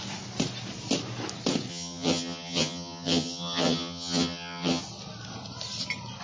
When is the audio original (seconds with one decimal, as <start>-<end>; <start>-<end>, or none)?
0.0-1.7; 4.8-6.2

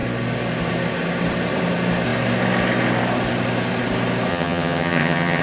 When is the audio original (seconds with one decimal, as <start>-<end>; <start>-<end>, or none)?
0.0-4.3

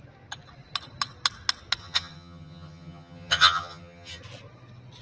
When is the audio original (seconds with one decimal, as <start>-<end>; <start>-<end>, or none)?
0.0-1.8; 4.2-5.0